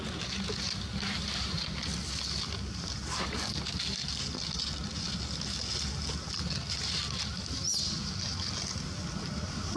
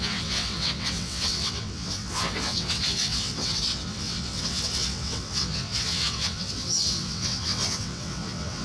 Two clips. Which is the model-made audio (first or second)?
second